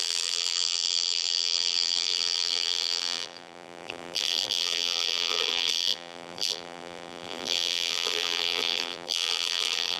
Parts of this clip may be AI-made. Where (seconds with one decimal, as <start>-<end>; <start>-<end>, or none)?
0.0-10.0